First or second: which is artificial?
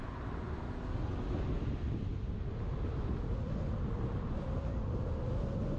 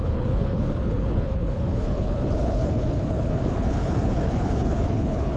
second